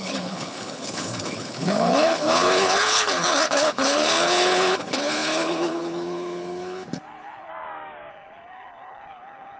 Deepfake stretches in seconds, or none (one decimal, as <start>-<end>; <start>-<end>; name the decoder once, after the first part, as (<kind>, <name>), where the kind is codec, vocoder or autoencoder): 0.0-7.5 (codec, HILCodec); 8.1-9.6